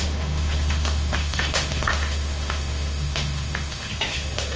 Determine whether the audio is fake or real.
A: fake